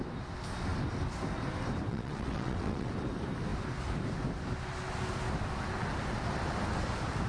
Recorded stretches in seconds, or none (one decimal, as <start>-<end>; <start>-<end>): 0.0-1.9; 2.9-7.3